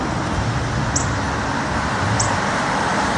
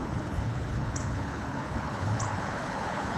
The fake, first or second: second